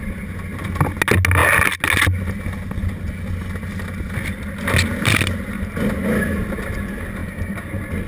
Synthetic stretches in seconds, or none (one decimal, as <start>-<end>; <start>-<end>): none